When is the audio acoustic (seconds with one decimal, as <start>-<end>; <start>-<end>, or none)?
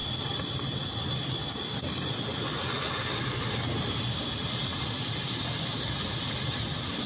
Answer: 0.0-7.1